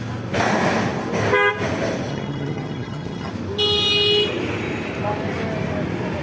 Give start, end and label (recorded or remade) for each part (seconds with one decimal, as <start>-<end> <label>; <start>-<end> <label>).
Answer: 0.0-2.1 recorded; 2.1-3.3 remade; 3.3-6.2 recorded